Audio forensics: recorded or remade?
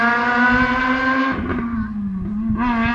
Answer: recorded